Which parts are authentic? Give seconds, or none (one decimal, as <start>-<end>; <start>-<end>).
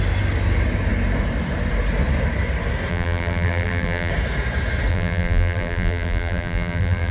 0.0-2.9; 4.1-4.9